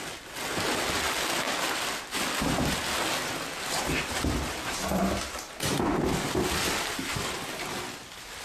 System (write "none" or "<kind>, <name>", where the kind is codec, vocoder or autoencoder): none